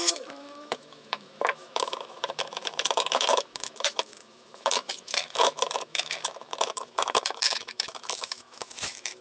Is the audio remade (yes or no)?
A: yes